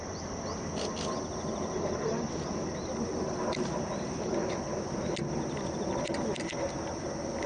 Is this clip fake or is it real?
real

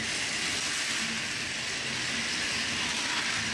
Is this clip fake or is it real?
real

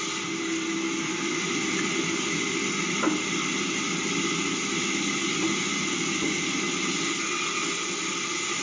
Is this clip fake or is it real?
real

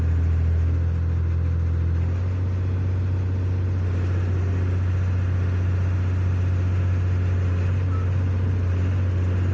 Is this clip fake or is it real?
real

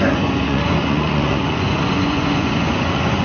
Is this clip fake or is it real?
fake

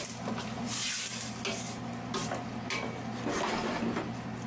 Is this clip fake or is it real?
real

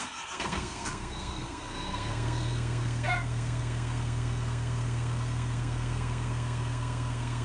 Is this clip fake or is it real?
fake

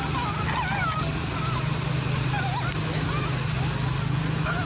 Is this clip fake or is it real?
real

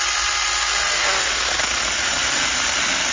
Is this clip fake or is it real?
real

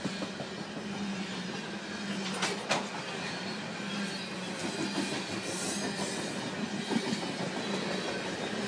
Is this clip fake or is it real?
real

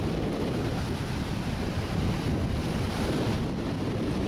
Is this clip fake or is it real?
real